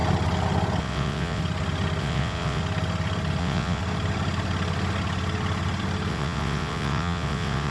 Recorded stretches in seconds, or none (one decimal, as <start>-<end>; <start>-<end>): 0.0-0.8; 1.4-2.0; 2.6-3.4; 3.8-6.1